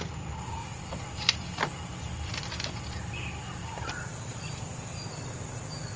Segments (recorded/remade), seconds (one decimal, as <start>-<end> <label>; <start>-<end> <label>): 0.0-0.6 recorded; 0.6-3.0 remade; 3.0-3.6 recorded; 3.6-4.6 remade; 4.6-6.0 recorded